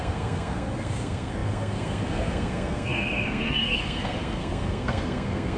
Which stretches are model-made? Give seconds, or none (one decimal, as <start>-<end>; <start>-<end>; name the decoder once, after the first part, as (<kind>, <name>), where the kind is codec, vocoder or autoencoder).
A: 0.0-5.6 (codec, SNAC)